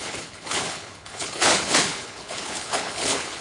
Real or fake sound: fake